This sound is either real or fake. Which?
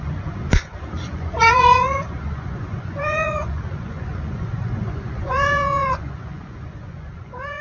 fake